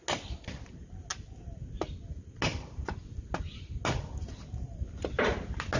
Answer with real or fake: real